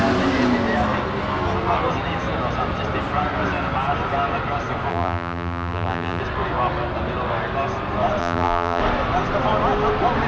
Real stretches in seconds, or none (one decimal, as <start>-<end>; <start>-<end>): 0.0-4.9; 6.2-8.2; 8.8-10.3